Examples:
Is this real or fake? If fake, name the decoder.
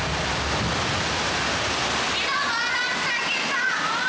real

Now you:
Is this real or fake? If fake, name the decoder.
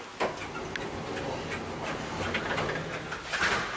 real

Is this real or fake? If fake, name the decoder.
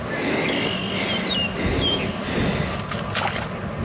real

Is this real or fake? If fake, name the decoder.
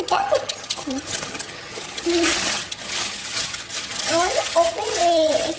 fake, vocoder, HiFi-GAN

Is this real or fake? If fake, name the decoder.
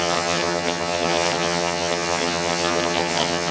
fake, vocoder, HiFi-GAN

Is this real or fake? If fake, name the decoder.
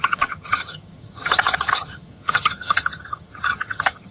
fake, vocoder, HiFi-GAN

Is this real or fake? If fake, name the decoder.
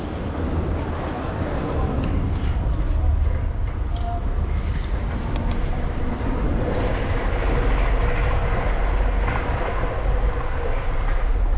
real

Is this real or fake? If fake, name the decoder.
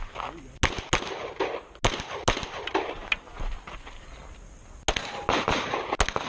real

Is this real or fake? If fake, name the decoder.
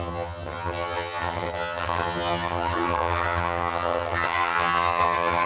fake, vocoder, HiFi-GAN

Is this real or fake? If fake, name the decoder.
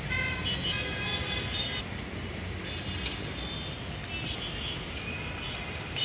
real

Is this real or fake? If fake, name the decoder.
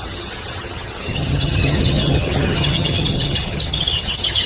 fake, vocoder, HiFi-GAN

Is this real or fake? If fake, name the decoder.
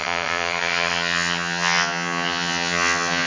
fake, vocoder, HiFi-GAN